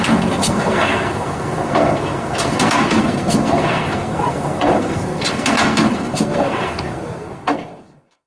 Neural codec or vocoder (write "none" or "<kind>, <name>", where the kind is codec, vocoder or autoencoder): codec, SNAC